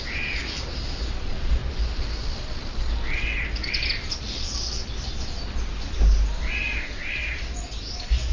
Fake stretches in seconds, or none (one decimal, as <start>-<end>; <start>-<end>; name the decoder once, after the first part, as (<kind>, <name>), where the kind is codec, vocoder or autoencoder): none